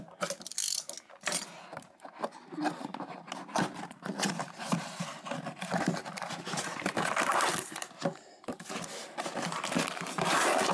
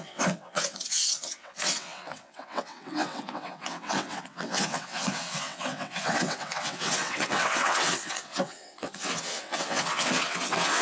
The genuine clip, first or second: first